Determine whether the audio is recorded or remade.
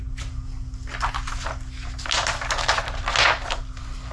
recorded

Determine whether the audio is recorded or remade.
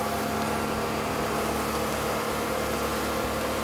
recorded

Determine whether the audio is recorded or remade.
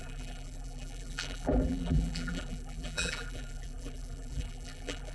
remade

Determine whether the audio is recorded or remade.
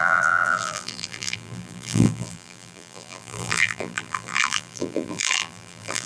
remade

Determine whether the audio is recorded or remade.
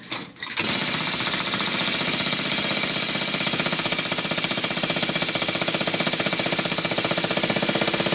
recorded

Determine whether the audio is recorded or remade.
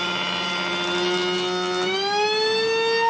recorded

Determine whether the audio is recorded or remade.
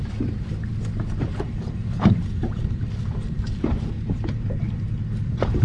remade